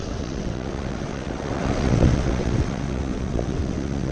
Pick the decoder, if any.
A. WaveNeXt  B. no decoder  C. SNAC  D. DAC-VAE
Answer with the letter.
A